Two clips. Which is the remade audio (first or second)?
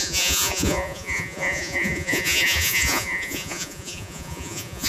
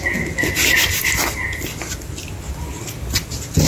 first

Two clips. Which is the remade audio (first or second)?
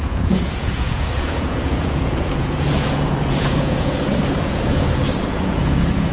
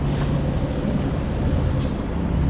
first